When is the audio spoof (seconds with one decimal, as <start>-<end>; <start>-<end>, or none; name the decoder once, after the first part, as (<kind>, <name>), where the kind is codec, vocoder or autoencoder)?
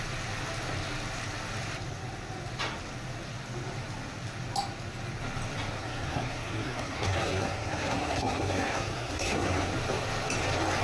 5.8-9.7 (codec, SNAC)